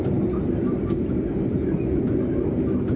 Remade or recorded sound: recorded